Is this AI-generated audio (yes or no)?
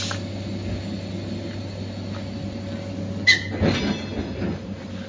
no